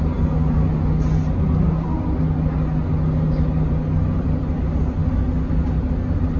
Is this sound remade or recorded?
recorded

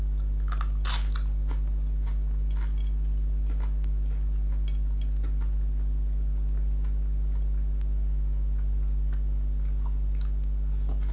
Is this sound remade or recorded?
recorded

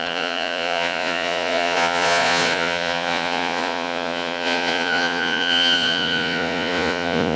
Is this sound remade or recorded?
remade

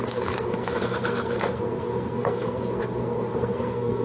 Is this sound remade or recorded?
remade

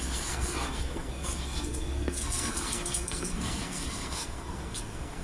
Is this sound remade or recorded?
remade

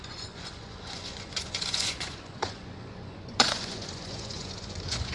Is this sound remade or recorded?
remade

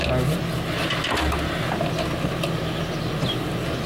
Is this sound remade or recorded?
recorded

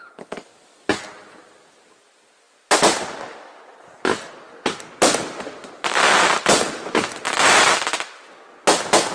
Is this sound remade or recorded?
recorded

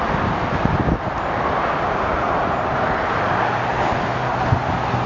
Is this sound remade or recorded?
recorded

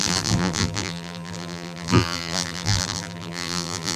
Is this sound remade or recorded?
remade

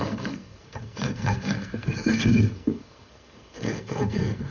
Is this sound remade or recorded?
remade